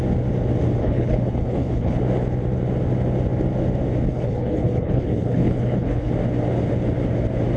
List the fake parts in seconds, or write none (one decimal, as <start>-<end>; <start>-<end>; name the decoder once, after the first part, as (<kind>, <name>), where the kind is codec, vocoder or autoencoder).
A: 0.8-2.0 (codec, HILCodec); 4.1-6.1